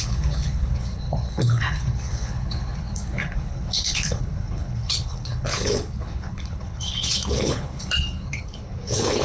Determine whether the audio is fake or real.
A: fake